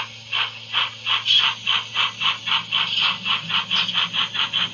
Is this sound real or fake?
real